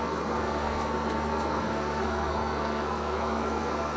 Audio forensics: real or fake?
fake